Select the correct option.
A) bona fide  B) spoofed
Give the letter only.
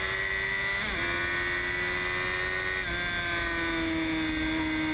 A